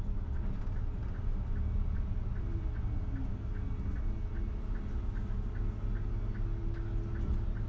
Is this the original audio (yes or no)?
yes